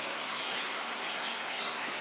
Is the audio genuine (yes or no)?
no